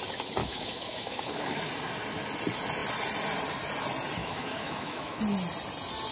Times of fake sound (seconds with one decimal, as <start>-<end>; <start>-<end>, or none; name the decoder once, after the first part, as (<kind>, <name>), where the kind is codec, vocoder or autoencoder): 0.4-1.6 (autoencoder, DAC-VAE); 4.2-5.2

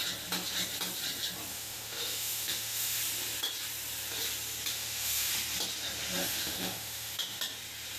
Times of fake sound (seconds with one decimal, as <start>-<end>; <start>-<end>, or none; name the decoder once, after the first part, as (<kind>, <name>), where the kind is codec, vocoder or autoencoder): 1.5-3.0 (autoencoder, DAC-VAE); 4.7-5.3; 6.2-7.4

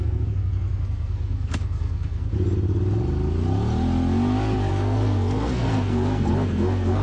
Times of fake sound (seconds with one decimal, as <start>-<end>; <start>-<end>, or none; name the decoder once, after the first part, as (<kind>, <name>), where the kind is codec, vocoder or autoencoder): 0.0-2.3 (codec, SNAC); 4.7-7.0

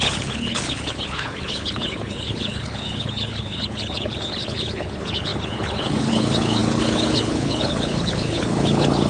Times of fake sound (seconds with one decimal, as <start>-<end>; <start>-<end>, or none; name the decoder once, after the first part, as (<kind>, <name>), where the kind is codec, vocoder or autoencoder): 0.0-9.1 (codec, HILCodec)

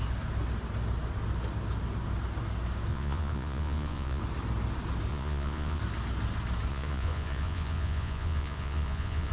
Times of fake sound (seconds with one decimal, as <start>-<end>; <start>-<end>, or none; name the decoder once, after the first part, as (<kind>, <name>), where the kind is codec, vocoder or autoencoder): 2.9-4.2 (vocoder, Vocos); 5.1-5.8; 6.7-9.3

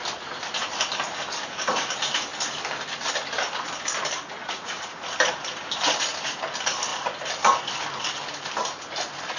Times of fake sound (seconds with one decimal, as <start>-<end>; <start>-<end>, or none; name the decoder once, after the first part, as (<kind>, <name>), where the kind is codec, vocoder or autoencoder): 4.4-5.0 (vocoder, Vocos)